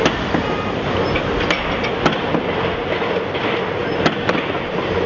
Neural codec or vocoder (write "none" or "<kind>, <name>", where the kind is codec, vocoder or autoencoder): none